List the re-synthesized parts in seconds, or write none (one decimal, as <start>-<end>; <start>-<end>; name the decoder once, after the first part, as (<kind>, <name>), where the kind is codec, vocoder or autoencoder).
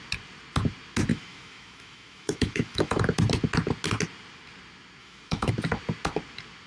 1.1-3.0 (autoencoder, DAC-VAE); 5.0-5.5